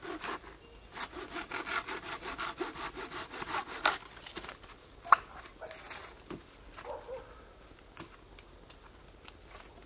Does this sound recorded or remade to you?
recorded